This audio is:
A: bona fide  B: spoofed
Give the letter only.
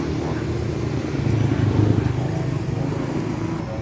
A